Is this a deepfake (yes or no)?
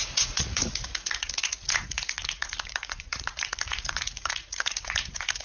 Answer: yes